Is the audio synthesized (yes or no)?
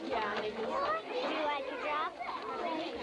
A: no